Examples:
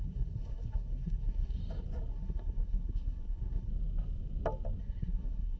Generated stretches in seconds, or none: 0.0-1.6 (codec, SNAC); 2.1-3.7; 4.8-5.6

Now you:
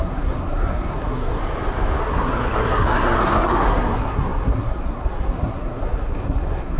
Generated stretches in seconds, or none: 0.0-1.4 (codec, SNAC); 2.0-6.8

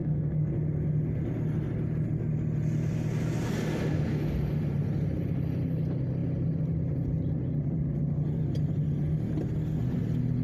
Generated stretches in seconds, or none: 0.0-0.5 (codec, SNAC)

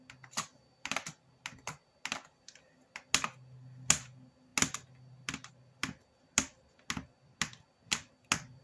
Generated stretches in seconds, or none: none

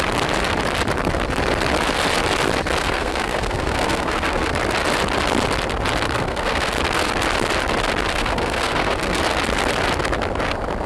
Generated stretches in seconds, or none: 2.8-4.5 (codec, SNAC); 6.1-6.7; 8.1-9.2

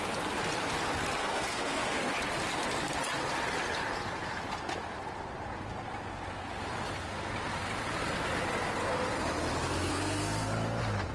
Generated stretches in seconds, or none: 1.2-2.1 (codec, SNAC); 9.9-10.5